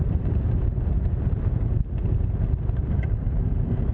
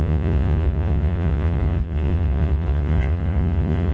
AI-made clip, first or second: second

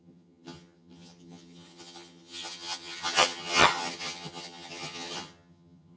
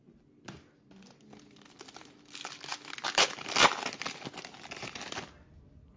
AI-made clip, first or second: first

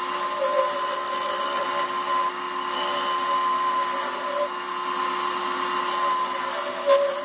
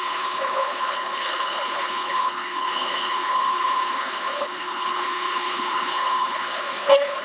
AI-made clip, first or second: second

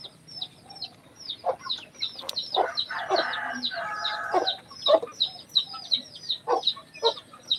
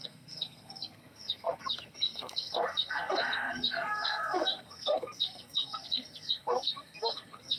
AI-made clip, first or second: second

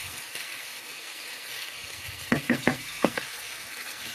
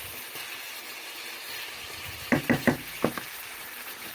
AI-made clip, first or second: first